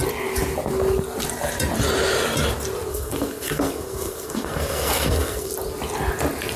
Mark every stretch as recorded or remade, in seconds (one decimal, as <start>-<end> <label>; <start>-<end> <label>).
0.0-2.9 recorded; 2.9-5.5 remade; 5.5-6.6 recorded